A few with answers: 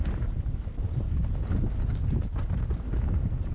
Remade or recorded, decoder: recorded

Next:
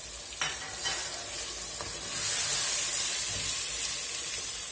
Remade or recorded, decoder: recorded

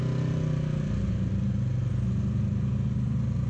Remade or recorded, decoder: recorded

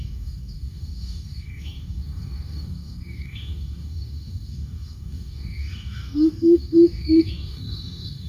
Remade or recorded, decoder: remade, codec, DAC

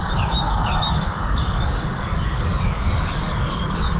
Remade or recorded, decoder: remade, codec, DAC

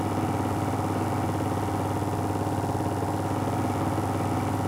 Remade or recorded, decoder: recorded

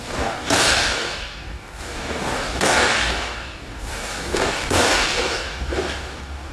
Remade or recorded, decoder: remade, codec, DAC